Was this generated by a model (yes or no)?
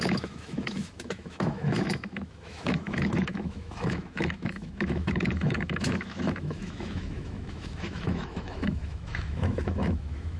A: yes